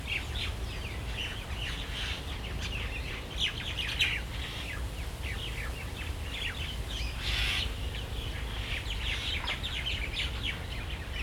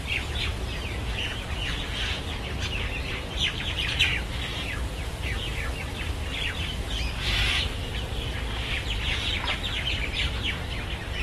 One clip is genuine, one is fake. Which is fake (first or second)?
second